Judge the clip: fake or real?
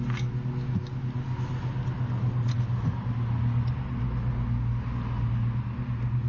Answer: real